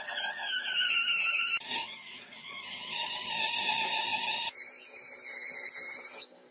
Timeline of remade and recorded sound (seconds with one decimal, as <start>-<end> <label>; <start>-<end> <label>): 0.0-1.8 recorded; 1.8-2.5 remade; 2.5-6.5 recorded